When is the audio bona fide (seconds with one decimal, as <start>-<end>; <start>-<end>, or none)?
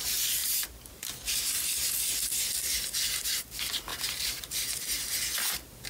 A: 0.4-0.9